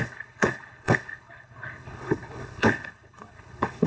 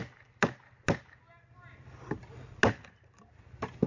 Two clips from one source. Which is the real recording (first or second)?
second